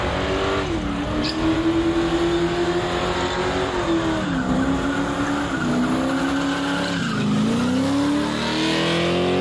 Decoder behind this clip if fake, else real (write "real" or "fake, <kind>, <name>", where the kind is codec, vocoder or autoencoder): real